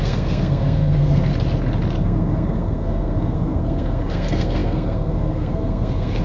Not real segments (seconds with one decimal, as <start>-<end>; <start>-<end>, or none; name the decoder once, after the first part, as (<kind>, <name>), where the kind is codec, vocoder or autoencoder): 0.0-1.3 (codec, SNAC); 2.0-6.2